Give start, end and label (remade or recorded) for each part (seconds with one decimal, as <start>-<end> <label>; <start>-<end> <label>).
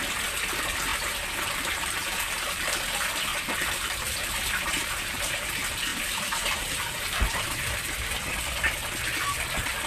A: 0.0-0.9 recorded; 0.9-2.7 remade; 2.7-3.3 recorded; 3.3-5.5 remade; 5.5-5.9 recorded; 5.9-8.1 remade; 8.1-9.9 recorded